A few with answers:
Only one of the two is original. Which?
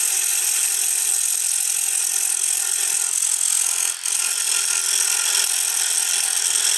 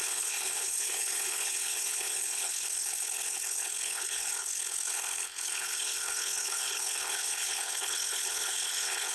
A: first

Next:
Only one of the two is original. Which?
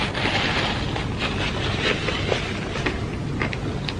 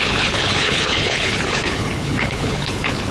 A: first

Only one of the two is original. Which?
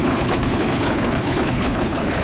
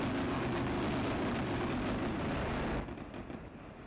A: second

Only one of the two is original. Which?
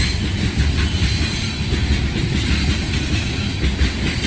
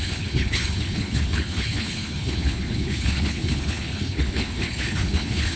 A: first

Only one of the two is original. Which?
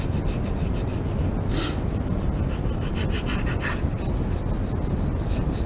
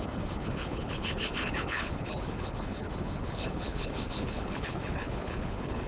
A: first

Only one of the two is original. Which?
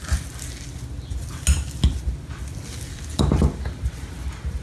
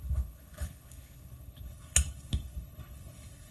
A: first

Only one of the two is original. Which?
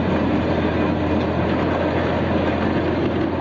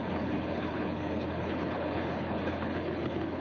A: first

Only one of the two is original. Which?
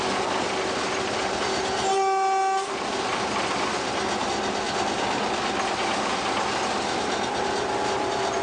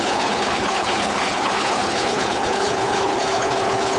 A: first